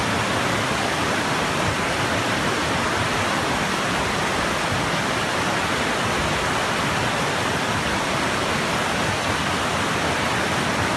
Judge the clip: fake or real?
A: real